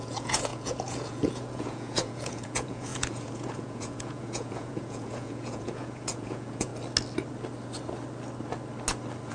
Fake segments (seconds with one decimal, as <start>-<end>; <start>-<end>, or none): 0.0-6.7